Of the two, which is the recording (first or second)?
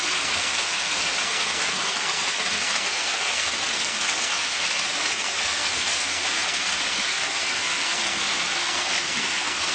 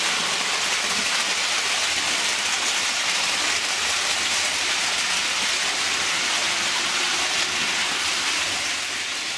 second